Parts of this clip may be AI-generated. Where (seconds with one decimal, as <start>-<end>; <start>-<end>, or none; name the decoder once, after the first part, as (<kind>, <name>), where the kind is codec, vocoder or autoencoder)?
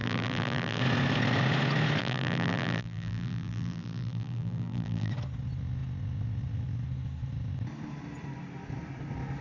0.0-0.8 (vocoder, BigVGAN v2); 2.0-5.1